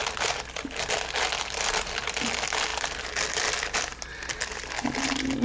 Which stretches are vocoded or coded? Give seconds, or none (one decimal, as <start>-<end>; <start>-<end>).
none